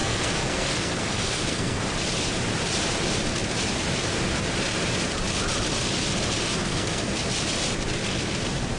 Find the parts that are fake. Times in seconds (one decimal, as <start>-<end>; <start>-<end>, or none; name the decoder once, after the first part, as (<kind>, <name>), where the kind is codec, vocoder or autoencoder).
0.0-1.8 (codec, SNAC); 6.6-7.1